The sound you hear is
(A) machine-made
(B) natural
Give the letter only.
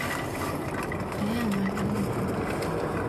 B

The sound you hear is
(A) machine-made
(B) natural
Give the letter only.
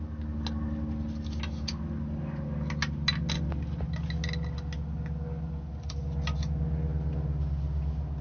B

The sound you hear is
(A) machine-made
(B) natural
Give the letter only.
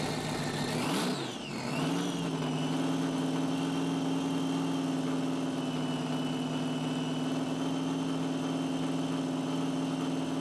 B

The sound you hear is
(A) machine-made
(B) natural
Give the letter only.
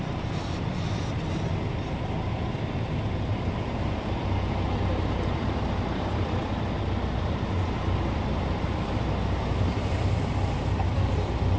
A